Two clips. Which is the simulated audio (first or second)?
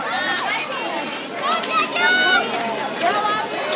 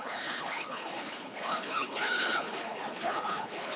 second